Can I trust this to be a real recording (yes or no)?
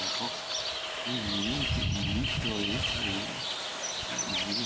yes